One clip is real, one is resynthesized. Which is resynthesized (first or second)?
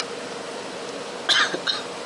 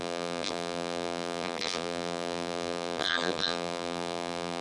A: second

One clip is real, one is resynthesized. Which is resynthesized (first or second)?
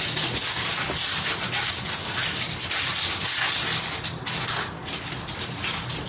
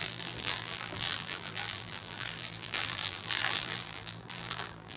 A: second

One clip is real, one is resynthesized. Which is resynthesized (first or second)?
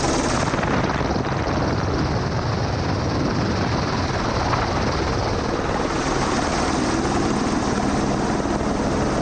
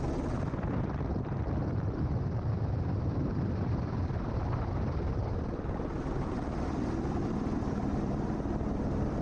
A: second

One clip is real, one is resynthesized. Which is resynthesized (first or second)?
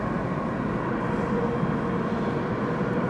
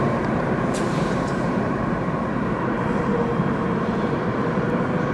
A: second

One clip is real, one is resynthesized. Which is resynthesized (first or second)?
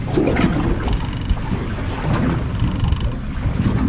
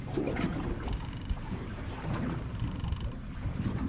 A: second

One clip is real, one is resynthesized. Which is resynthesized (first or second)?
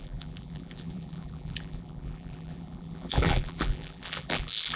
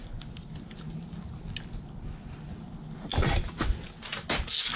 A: first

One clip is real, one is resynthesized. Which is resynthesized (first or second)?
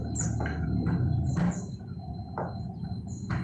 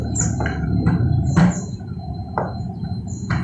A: second